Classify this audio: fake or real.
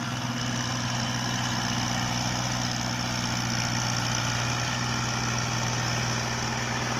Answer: real